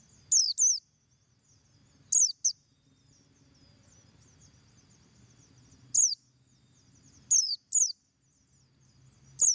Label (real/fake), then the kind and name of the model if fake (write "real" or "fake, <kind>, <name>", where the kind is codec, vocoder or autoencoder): real